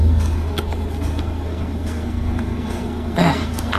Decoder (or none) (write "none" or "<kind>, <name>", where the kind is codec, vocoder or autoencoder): codec, SNAC